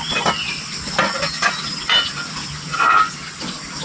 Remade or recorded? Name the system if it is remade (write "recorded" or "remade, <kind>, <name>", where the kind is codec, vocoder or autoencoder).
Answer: recorded